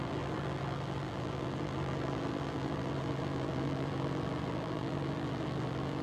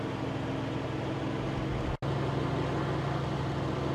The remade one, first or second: first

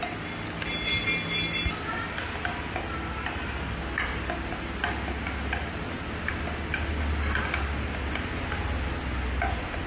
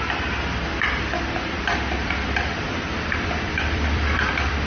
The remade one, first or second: second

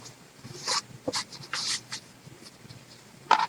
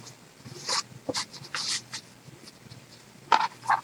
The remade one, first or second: first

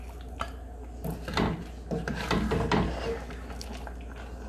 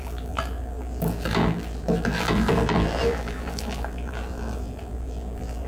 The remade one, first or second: second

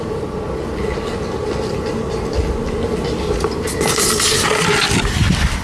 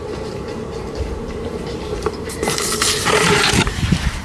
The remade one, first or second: second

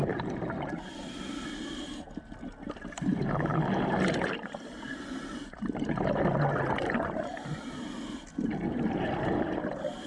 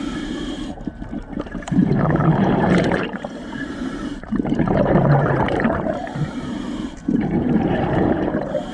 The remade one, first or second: second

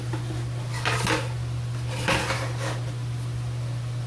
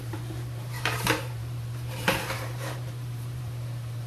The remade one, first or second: second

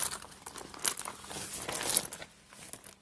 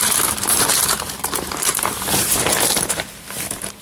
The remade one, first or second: second